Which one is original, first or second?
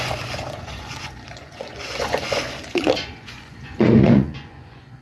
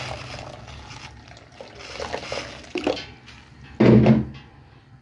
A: second